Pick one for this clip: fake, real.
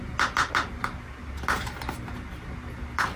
real